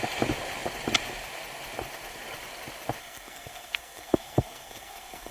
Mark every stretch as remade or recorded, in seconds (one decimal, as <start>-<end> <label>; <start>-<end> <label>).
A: 0.0-3.0 recorded; 3.0-5.3 remade

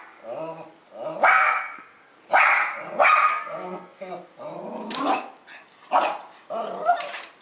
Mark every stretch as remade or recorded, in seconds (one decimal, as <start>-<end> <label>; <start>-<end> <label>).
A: 0.0-1.3 recorded; 1.3-2.1 remade; 2.1-3.3 recorded; 3.3-4.1 remade; 4.1-7.4 recorded

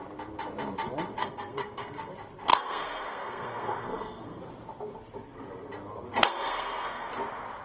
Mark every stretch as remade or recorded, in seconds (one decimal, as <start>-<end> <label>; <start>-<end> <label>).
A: 0.0-1.2 recorded; 1.2-2.1 remade; 2.1-2.5 recorded; 2.5-4.4 remade; 4.4-6.2 recorded; 6.2-7.1 remade; 7.1-7.6 recorded